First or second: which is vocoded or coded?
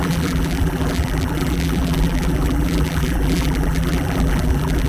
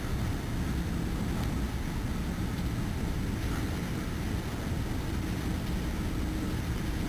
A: first